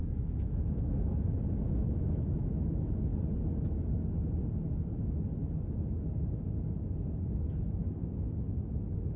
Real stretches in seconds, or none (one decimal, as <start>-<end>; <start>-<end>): 3.1-7.5